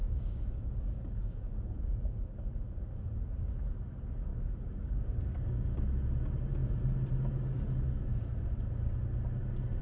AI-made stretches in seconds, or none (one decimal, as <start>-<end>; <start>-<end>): 0.0-2.5; 4.3-5.8